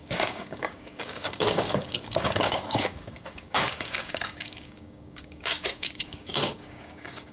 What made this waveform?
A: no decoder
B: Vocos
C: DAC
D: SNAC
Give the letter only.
C